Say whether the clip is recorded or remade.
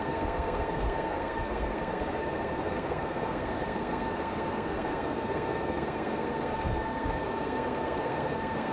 remade